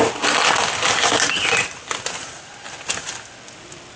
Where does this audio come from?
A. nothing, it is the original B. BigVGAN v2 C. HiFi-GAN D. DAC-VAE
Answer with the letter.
A